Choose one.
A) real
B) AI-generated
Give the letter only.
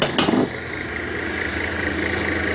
A